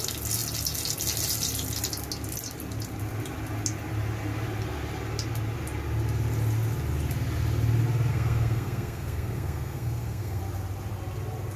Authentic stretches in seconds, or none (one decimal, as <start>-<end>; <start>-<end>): 0.0-8.1; 10.4-11.6